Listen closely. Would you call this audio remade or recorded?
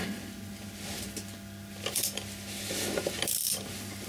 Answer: remade